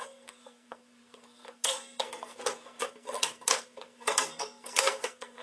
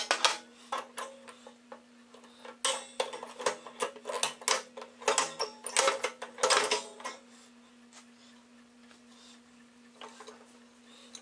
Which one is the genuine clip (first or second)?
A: second